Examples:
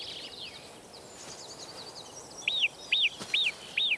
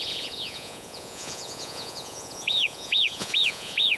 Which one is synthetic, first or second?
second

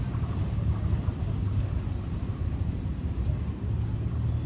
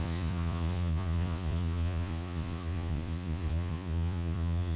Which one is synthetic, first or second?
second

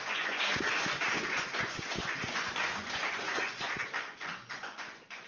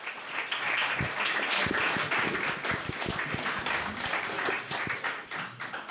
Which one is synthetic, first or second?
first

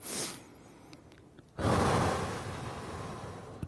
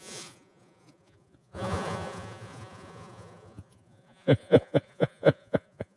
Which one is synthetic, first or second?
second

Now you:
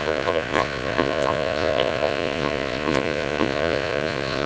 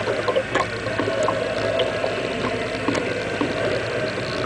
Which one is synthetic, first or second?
first